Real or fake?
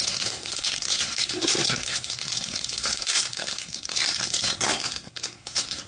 fake